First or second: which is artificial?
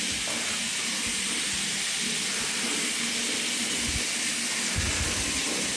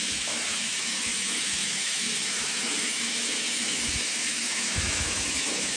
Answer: second